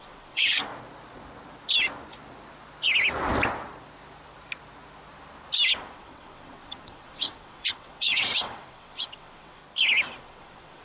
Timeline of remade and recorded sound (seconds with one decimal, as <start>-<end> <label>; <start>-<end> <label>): 0.0-0.7 remade; 0.7-5.7 recorded; 5.7-9.6 remade; 9.6-10.1 recorded; 10.1-10.8 remade